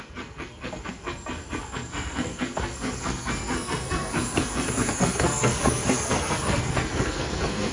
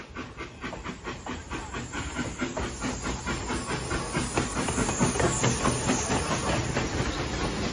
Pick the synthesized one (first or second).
first